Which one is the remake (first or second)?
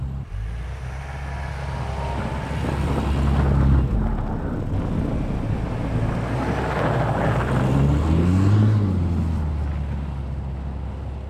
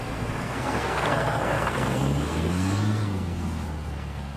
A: second